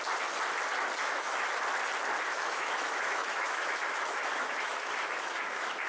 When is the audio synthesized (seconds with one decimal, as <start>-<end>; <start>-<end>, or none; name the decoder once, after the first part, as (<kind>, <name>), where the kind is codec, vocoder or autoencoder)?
1.0-1.6 (autoencoder, DAC-VAE); 2.3-5.9

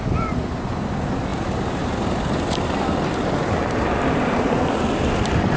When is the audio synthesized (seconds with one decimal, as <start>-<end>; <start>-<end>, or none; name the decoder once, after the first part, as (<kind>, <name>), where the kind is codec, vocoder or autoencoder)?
none

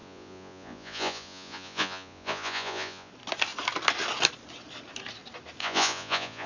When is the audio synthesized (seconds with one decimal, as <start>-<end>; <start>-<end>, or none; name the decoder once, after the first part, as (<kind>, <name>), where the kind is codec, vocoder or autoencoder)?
0.0-3.1 (vocoder, Vocos); 5.6-6.5

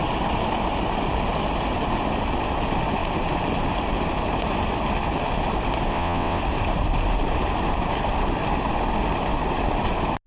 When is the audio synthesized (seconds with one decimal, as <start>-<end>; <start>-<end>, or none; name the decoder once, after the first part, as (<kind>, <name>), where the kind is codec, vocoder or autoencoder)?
5.9-6.4 (vocoder, WaveNeXt)

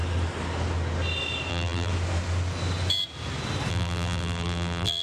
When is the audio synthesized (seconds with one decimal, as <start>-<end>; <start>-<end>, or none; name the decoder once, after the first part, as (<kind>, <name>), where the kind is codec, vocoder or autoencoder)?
1.5-1.9 (vocoder, BigVGAN v2); 3.7-5.0

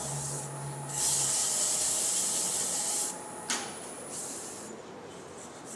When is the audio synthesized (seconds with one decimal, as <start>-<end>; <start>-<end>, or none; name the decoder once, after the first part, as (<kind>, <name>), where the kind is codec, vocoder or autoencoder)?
none

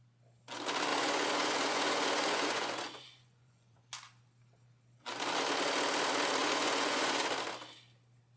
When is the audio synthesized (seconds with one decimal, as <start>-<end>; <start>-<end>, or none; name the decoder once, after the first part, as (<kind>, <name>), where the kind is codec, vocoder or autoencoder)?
0.9-3.8 (vocoder, Vocos); 6.4-7.2